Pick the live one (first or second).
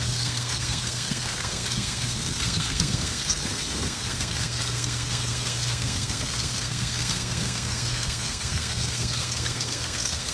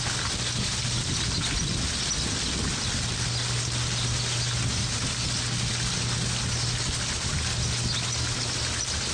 second